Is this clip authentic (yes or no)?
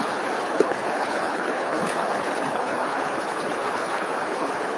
no